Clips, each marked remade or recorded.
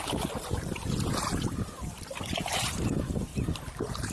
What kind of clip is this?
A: recorded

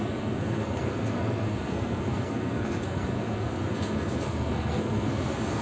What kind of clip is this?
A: remade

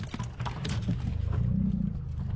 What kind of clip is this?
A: recorded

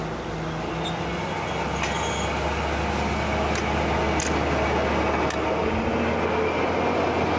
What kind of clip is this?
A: recorded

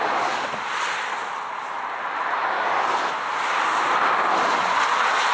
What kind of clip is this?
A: recorded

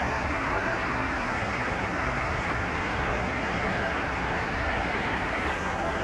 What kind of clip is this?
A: remade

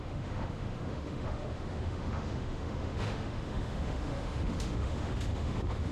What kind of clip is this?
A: remade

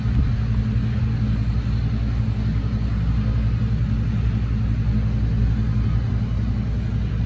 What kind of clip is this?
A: recorded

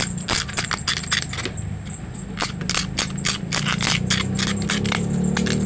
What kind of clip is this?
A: recorded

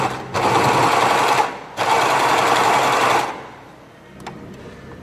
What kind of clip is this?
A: recorded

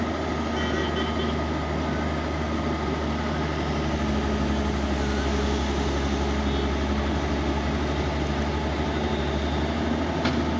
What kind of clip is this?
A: recorded